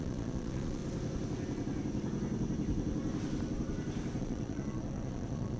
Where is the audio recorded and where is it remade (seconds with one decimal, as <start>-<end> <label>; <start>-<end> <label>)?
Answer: 0.0-0.8 remade; 0.8-4.2 recorded; 4.2-5.6 remade